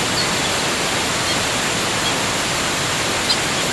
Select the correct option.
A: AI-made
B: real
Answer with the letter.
B